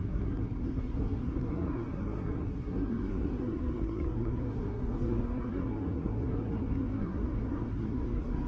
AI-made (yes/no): yes